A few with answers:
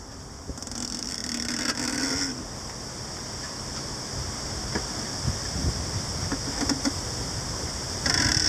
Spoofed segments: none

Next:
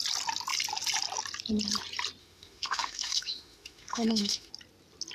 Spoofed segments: 2.2-4.5 (autoencoder, DAC-VAE)

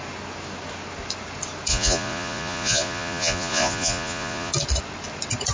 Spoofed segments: 1.7-4.5 (vocoder, Vocos)

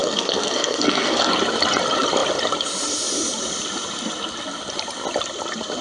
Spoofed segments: 0.0-1.3 (codec, SNAC)

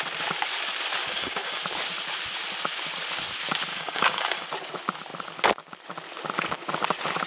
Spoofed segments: 1.0-1.6 (codec, DAC); 3.7-4.5

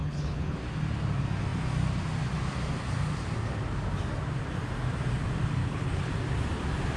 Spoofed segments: 0.0-0.6 (codec, HILCodec); 5.6-6.1

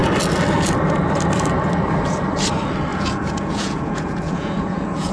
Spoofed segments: 2.9-5.1 (vocoder, Vocos)

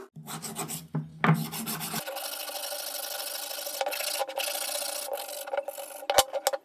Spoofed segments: none